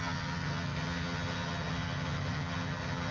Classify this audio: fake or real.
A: fake